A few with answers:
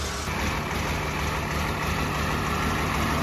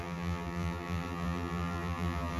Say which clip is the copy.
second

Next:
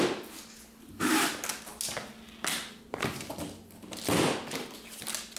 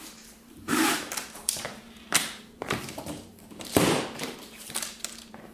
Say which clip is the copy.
second